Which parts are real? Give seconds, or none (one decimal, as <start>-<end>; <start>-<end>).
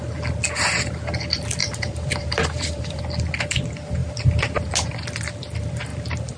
0.0-1.6; 3.0-4.0; 4.7-6.4